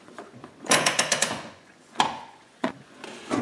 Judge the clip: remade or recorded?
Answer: remade